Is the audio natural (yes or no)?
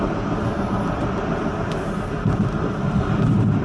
yes